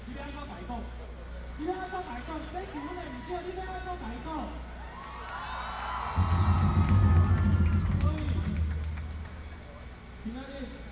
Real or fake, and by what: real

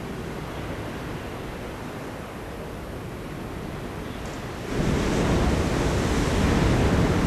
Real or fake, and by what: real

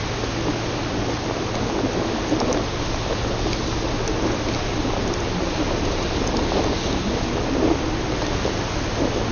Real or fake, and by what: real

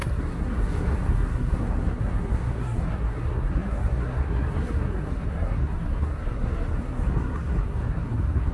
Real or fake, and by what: fake, codec, SNAC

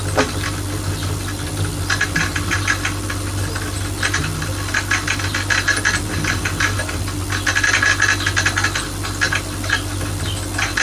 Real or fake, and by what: real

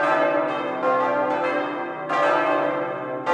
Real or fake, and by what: real